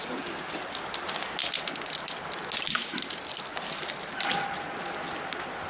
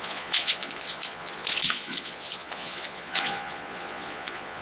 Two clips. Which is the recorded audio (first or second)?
first